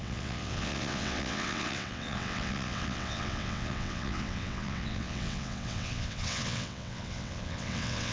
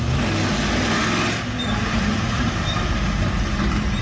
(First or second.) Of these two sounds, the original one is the second